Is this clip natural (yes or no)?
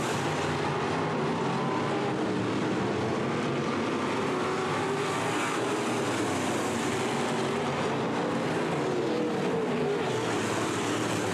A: yes